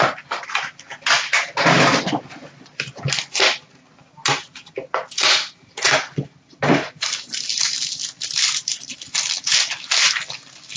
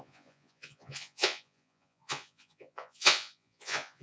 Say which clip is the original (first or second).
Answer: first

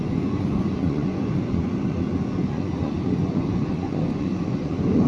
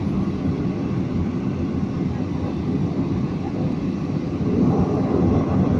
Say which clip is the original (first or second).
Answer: second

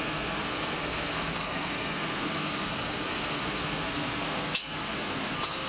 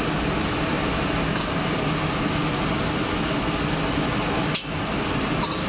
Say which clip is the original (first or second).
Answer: second